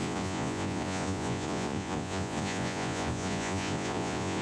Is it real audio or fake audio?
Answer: fake